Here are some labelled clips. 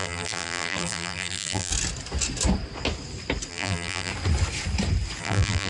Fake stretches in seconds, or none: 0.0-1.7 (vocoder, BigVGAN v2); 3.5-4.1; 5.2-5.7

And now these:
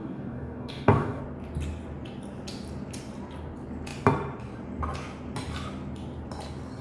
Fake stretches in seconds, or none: 0.0-1.2 (codec, DAC)

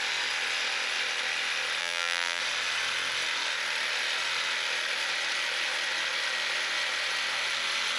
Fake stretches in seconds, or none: 1.8-2.4 (vocoder, BigVGAN v2)

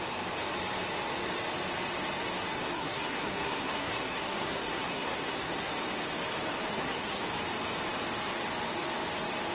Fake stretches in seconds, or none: 2.5-5.7 (codec, SNAC); 6.7-7.2